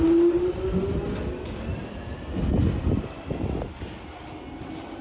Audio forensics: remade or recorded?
recorded